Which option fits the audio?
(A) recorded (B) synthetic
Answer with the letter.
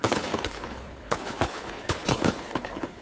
B